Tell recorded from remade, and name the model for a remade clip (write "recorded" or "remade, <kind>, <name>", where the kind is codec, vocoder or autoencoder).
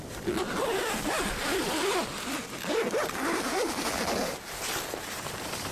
recorded